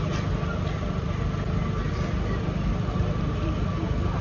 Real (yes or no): yes